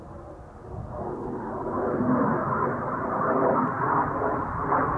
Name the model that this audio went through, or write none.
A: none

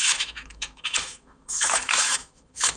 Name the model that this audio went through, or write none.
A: autoencoder, DAC-VAE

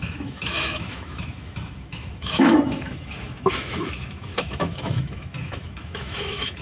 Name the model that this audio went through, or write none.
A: autoencoder, DAC-VAE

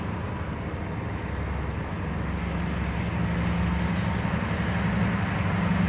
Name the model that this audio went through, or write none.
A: none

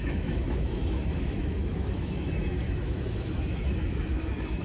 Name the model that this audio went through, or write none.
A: autoencoder, DAC-VAE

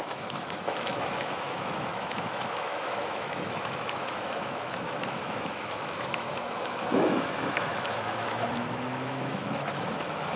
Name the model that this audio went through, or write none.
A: autoencoder, DAC-VAE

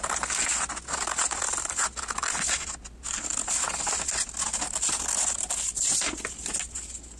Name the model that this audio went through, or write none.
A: none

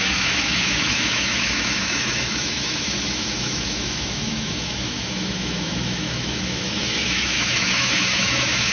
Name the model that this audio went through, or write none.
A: autoencoder, DAC-VAE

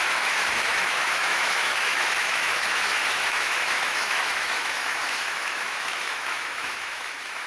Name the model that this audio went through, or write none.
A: autoencoder, DAC-VAE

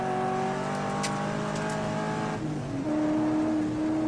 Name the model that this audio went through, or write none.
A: none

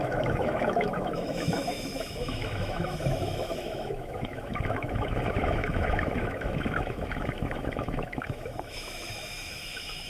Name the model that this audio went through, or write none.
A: autoencoder, DAC-VAE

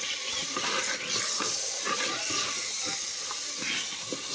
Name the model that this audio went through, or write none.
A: none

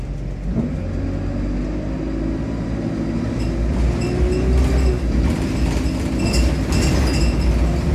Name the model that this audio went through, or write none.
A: none